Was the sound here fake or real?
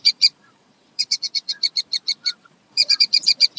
fake